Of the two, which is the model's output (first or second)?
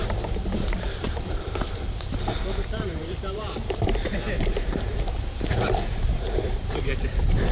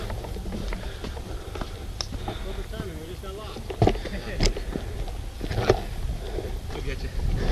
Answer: first